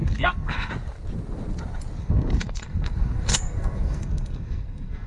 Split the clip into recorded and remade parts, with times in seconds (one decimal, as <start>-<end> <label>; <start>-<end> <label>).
0.0-0.7 remade; 0.7-2.0 recorded; 2.0-5.1 remade